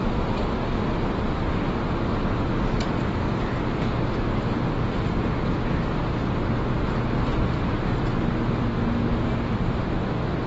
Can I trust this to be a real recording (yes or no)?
yes